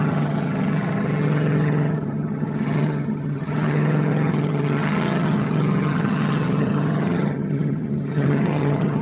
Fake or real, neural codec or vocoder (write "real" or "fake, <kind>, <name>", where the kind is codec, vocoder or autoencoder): fake, vocoder, HiFi-GAN